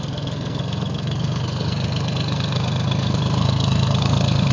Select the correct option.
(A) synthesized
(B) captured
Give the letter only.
A